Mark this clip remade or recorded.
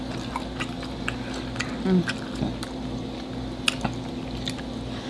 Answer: recorded